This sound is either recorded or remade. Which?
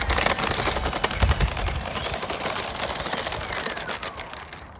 recorded